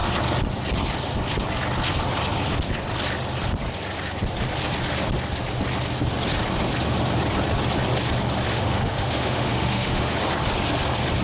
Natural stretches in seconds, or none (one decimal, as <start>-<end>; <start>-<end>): 0.0-8.5; 10.1-11.2